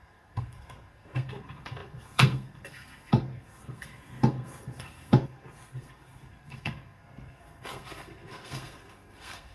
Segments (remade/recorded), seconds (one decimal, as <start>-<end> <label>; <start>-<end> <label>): 0.0-9.5 remade